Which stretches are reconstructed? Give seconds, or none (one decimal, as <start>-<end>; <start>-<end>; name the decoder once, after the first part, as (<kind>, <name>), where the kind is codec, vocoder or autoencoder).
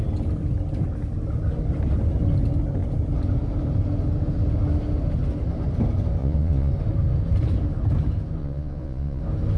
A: 6.2-6.7 (vocoder, Vocos); 8.4-9.2